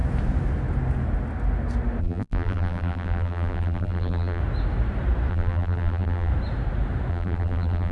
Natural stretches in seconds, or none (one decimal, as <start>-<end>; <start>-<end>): 0.0-2.0; 4.4-5.3; 6.3-7.1